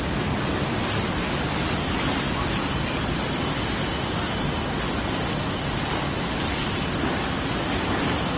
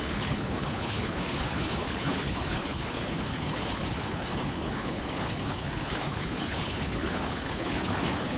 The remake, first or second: second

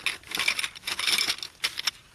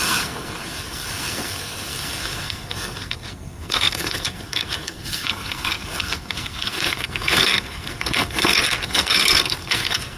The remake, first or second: second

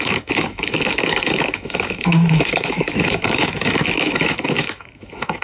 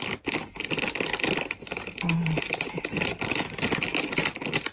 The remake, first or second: first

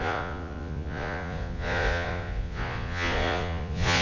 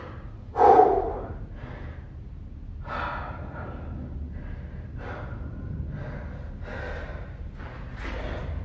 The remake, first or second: first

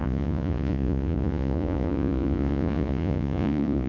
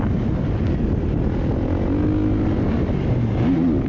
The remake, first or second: first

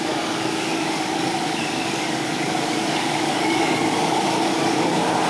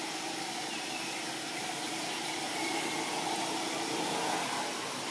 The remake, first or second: first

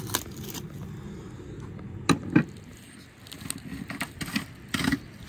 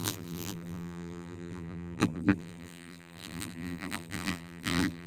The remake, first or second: second